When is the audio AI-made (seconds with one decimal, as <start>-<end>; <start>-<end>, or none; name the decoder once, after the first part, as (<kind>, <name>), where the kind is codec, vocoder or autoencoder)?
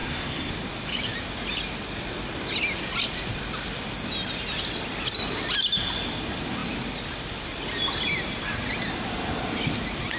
0.0-0.5 (codec, SNAC)